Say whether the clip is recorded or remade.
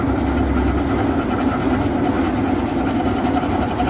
recorded